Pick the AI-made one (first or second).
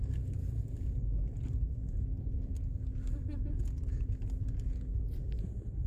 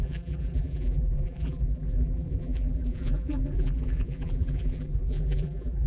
second